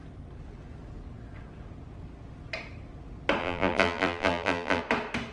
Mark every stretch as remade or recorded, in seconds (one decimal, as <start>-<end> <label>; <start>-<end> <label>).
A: 0.0-3.4 recorded; 3.4-4.8 remade; 4.8-5.3 recorded